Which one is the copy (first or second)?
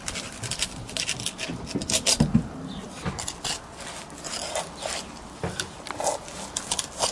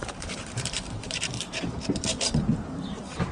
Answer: second